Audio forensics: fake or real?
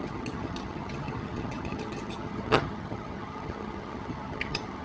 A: fake